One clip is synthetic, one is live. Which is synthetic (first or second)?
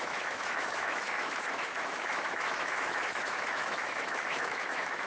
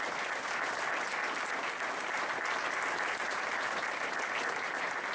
first